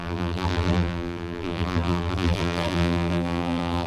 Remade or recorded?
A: remade